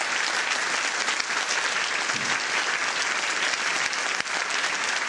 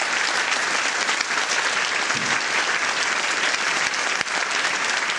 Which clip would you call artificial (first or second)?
second